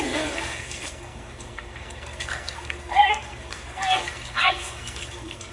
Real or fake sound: fake